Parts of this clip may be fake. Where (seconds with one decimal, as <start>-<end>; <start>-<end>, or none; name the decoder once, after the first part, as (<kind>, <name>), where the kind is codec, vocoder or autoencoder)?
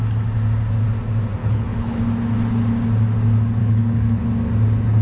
1.4-2.0 (codec, HILCodec); 3.6-4.2